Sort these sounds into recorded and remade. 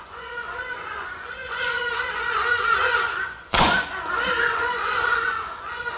remade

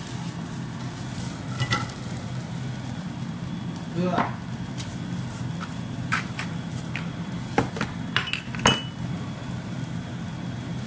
recorded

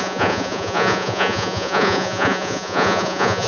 remade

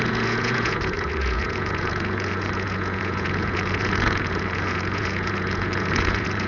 remade